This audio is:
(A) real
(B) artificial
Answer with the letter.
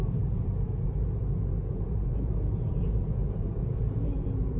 B